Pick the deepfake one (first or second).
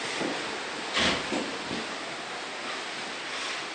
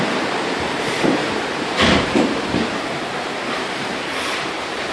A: second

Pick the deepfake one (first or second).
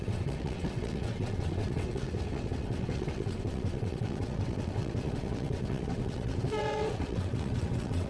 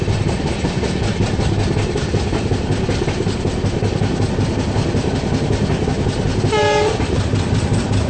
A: first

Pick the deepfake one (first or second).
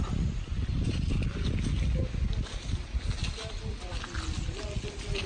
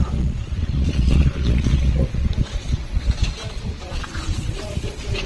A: second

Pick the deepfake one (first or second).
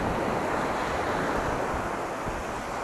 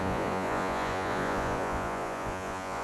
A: second